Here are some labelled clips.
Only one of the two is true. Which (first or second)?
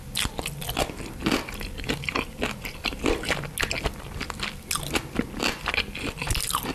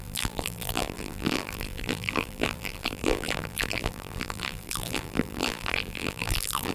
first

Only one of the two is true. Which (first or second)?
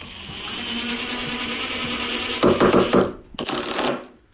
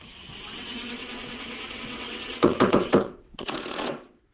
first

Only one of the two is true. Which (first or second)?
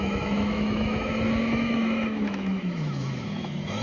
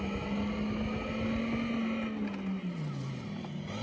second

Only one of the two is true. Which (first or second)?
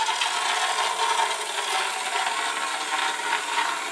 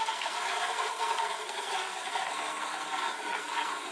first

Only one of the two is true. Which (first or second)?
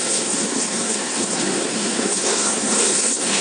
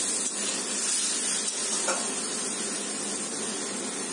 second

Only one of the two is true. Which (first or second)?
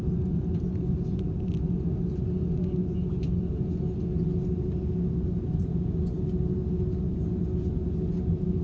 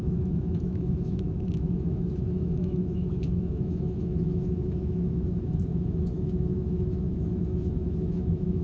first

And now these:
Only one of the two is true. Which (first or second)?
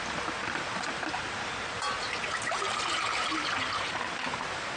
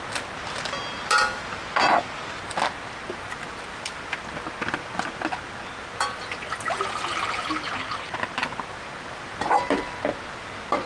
second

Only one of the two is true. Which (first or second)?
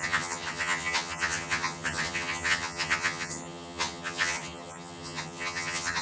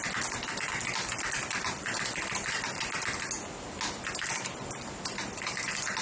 second